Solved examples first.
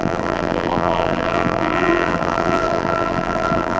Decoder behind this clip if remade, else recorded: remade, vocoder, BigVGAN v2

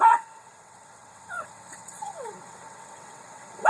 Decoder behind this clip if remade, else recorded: remade, vocoder, WaveNeXt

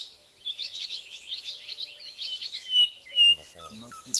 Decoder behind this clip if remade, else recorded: remade, autoencoder, DAC-VAE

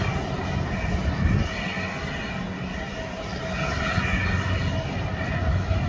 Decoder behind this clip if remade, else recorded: recorded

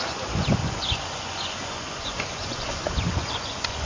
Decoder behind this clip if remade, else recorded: remade, vocoder, Vocos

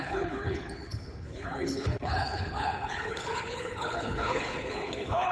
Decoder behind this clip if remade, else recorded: remade, codec, HILCodec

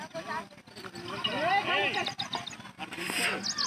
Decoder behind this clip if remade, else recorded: recorded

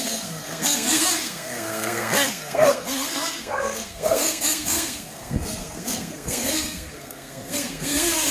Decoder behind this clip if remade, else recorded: remade, codec, SNAC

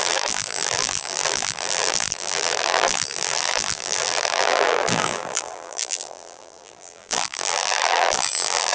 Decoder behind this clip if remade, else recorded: remade, vocoder, BigVGAN v2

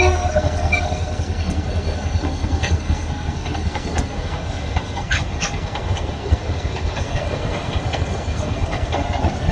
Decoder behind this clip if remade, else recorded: remade, codec, SNAC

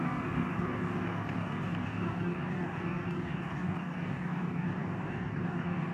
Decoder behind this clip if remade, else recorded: remade, codec, DAC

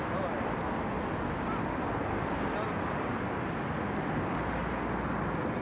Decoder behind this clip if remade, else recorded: recorded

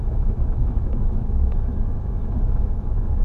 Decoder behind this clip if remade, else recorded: remade, autoencoder, DAC-VAE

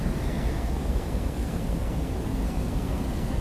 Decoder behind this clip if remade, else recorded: remade, codec, SNAC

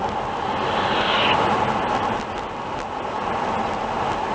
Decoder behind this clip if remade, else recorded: recorded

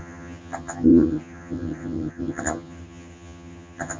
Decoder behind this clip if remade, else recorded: remade, vocoder, HiFi-GAN